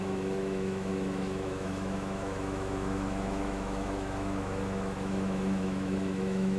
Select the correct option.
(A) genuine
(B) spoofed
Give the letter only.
B